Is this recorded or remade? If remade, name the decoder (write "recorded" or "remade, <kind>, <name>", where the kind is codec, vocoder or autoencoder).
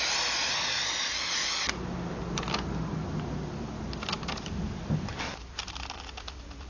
recorded